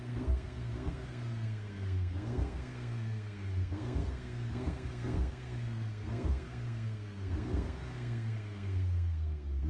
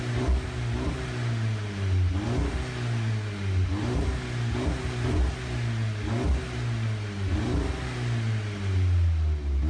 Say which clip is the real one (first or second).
second